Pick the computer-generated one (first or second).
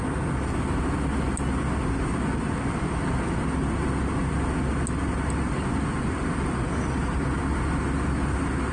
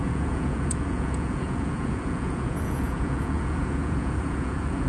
second